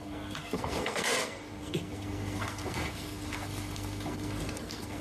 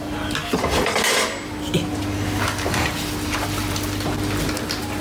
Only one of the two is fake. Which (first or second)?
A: first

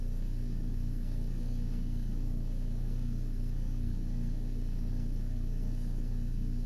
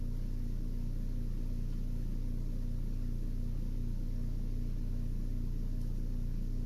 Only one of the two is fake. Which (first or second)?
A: first